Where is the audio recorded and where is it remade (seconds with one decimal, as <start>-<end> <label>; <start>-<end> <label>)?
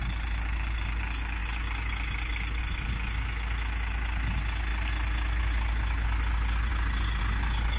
0.0-7.8 recorded